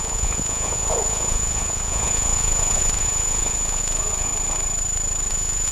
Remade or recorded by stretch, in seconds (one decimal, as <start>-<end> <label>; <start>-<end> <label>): 0.0-4.3 remade; 4.3-5.3 recorded; 5.3-5.7 remade